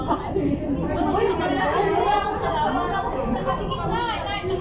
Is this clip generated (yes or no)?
no